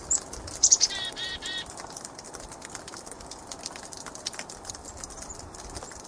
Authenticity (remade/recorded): remade